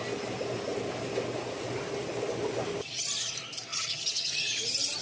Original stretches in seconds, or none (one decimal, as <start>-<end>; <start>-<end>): 0.0-3.7; 4.3-5.0